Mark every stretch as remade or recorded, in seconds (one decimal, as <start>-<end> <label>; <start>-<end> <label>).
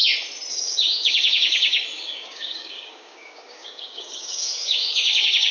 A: 0.0-0.5 recorded; 0.5-5.5 remade